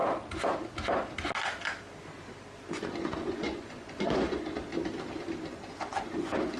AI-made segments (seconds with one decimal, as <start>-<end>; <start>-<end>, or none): 2.5-4.7; 5.5-6.6